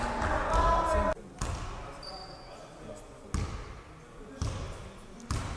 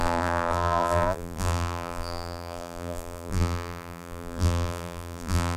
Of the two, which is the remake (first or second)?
second